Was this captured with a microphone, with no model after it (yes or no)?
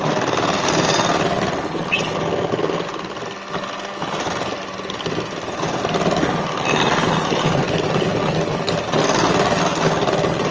yes